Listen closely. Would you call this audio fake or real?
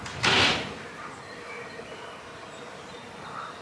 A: real